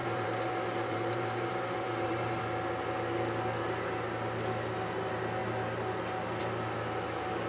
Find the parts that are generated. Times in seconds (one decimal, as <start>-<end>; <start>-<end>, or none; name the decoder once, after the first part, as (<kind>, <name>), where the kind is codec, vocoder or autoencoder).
0.0-2.4 (vocoder, BigVGAN v2)